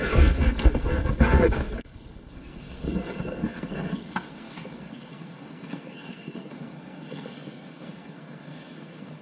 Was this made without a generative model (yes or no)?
no